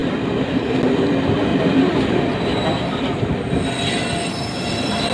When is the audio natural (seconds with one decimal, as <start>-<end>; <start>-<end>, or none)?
0.0-1.5; 3.3-5.1

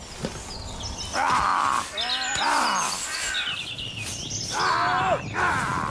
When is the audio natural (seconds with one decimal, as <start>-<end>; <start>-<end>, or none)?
0.0-5.9

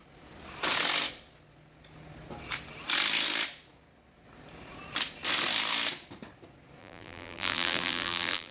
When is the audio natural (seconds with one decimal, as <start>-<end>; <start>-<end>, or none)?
0.0-6.8

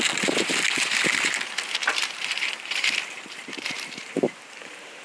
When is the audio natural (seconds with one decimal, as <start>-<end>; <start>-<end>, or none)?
0.0-1.8